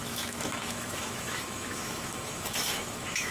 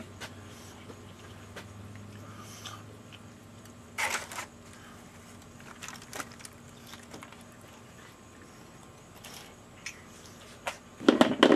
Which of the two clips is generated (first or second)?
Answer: first